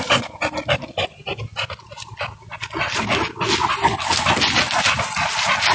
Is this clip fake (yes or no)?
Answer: no